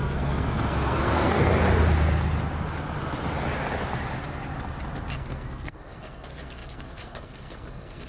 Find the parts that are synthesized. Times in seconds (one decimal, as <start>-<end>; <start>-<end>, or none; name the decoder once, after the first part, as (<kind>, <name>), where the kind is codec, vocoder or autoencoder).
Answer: 0.0-1.5 (codec, SNAC); 5.1-8.1

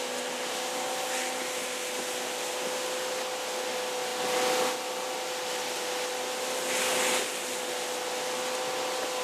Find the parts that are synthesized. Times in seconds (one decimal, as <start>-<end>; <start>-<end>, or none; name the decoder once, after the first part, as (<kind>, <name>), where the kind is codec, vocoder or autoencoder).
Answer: none

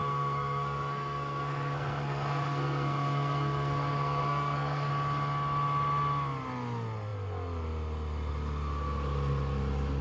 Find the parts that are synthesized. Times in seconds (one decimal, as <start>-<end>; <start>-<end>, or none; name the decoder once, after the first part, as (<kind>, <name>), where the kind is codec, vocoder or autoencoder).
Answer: 0.0-4.9 (codec, SNAC)

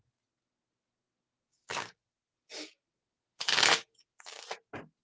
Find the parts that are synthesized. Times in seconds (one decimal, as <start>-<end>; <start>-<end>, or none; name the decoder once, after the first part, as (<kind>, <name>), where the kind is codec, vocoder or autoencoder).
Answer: 1.4-4.4 (codec, DAC)

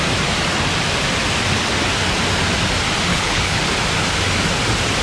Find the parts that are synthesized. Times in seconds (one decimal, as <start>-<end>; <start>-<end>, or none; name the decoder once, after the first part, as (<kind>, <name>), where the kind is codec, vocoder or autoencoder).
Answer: 3.1-3.6 (codec, HILCodec)

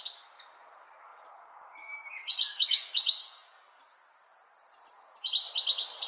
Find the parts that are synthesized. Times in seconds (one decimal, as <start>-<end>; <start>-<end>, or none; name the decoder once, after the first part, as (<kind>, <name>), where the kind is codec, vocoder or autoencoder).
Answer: 1.1-3.9 (codec, DAC); 4.7-5.3

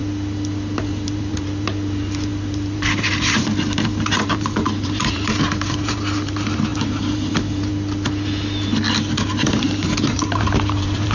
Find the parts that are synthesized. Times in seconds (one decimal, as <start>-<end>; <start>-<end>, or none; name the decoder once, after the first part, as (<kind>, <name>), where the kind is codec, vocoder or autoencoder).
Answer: 0.8-7.7 (vocoder, BigVGAN v2); 9.1-11.1

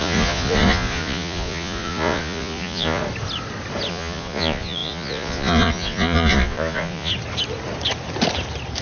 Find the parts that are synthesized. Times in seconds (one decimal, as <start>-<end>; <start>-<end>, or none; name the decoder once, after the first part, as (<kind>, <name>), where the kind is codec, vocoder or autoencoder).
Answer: 0.0-3.0 (vocoder, Vocos); 3.9-7.1